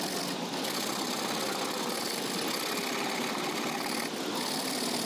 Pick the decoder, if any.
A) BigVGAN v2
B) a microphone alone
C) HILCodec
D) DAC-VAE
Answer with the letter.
B